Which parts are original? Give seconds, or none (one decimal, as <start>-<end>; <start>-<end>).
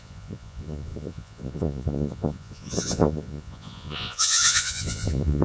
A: none